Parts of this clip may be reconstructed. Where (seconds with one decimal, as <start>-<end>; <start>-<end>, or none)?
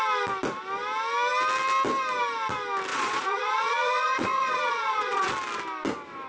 2.9-5.3